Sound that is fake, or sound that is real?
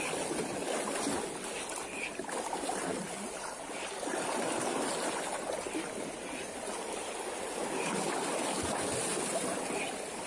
real